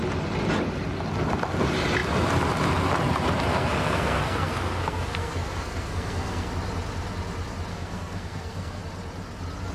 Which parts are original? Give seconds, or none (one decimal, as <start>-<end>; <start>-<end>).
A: 0.0-3.5; 6.5-7.7; 8.8-9.7